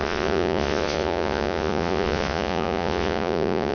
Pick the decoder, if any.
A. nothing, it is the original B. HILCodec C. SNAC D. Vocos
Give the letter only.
D